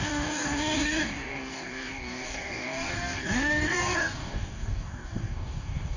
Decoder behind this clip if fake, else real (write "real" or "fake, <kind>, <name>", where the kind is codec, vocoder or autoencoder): fake, codec, DAC